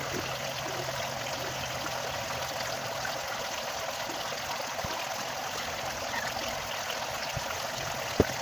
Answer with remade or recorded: recorded